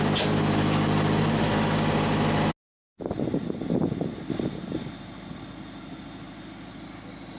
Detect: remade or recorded recorded